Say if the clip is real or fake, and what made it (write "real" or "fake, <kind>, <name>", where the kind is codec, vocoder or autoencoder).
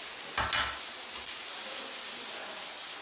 real